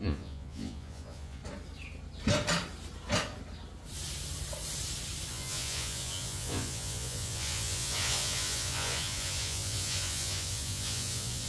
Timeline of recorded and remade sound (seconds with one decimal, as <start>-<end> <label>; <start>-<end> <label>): 0.0-1.4 remade; 1.4-5.3 recorded; 5.3-11.5 remade